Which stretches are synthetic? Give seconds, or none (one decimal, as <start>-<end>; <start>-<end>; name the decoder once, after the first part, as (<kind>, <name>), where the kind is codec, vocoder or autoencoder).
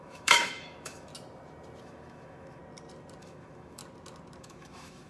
0.0-1.1 (autoencoder, DAC-VAE); 1.8-2.6; 3.2-3.8; 4.4-5.1